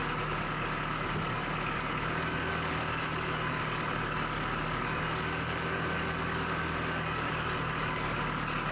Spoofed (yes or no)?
yes